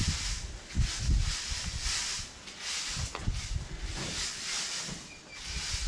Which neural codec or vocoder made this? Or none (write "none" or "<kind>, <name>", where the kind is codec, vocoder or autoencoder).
none